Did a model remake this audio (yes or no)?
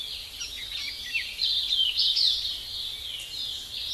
no